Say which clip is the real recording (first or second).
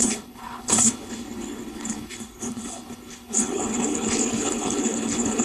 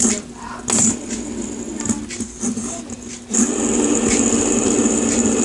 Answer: second